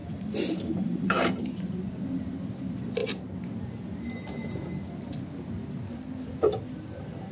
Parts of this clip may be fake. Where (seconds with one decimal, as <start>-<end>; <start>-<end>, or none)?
0.0-3.0; 6.3-7.3